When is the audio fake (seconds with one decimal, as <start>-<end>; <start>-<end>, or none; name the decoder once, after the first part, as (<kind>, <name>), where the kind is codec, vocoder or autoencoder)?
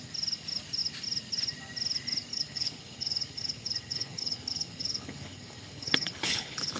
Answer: 2.3-6.8 (codec, HILCodec)